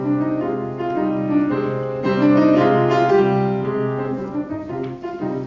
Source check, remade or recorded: recorded